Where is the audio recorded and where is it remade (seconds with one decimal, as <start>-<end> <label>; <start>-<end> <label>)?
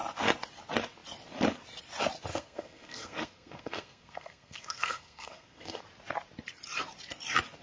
0.0-2.3 recorded; 2.3-5.8 remade; 5.8-7.6 recorded